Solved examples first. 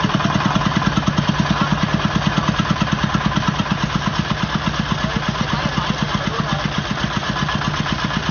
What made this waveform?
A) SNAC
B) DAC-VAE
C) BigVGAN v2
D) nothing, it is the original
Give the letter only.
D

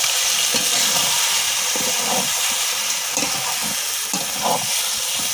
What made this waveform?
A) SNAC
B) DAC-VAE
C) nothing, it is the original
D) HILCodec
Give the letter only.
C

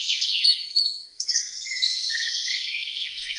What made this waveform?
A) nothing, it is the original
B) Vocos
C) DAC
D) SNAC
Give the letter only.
D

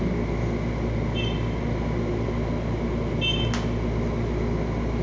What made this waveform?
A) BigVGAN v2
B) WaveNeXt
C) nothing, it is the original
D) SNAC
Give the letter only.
C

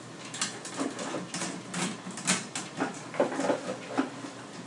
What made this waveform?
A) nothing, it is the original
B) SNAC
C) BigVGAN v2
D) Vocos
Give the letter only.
A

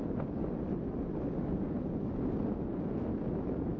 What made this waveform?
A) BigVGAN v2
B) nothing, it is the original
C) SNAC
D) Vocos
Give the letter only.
B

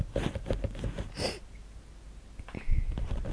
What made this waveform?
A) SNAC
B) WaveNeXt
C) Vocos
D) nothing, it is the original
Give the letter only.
D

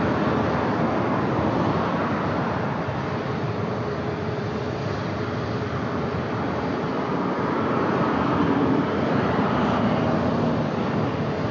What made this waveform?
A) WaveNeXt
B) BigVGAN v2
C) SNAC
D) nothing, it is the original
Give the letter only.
D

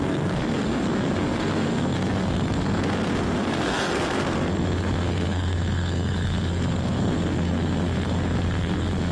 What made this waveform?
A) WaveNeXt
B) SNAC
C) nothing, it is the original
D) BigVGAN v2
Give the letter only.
B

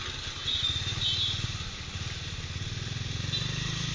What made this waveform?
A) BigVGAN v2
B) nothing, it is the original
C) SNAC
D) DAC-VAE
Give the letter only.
B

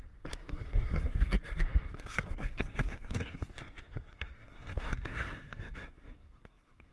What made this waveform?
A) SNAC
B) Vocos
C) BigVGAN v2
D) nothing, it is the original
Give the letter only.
A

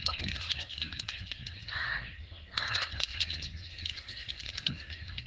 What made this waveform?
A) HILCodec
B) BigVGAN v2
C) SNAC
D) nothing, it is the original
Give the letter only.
C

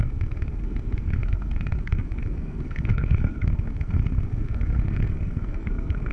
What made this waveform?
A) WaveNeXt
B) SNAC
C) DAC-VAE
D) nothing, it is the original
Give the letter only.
B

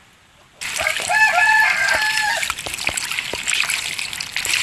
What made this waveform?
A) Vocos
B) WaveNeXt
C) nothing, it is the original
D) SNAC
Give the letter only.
C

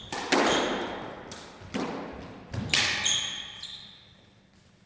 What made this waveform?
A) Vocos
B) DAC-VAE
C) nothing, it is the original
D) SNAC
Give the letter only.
C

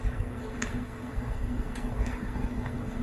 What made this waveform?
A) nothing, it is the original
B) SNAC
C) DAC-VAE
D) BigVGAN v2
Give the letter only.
B